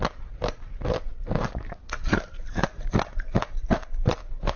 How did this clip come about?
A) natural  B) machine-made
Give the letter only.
B